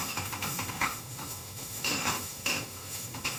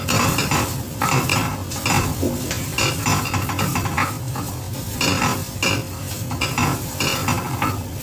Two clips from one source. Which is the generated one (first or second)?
first